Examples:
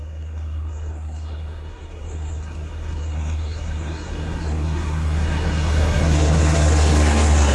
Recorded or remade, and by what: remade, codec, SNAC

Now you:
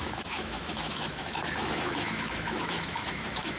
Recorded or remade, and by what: remade, autoencoder, DAC-VAE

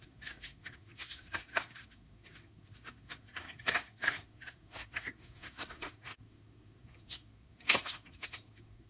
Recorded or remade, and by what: remade, codec, SNAC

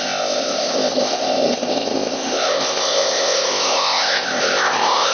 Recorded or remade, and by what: remade, codec, ZipCodec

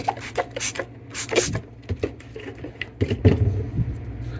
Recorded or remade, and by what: recorded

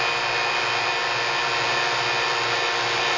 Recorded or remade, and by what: recorded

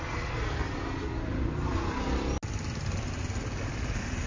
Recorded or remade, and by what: recorded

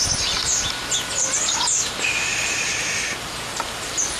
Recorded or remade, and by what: recorded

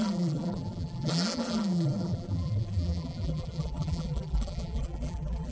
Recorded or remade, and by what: remade, vocoder, BigVGAN v2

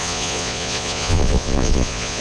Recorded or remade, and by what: remade, vocoder, Vocos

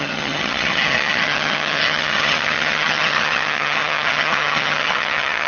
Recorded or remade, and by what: remade, vocoder, HiFi-GAN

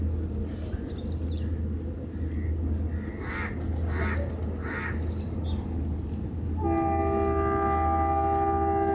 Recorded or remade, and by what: recorded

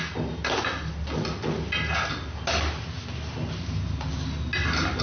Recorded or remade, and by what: recorded